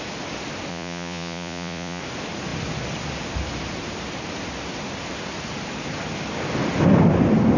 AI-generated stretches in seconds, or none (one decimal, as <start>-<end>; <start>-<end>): 0.7-2.0